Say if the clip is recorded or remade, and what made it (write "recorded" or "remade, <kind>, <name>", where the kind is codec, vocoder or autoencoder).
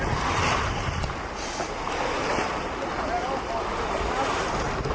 recorded